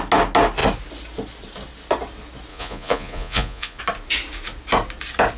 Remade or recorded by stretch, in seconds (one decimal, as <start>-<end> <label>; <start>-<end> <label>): 0.0-2.5 recorded; 2.5-3.8 remade; 3.8-5.4 recorded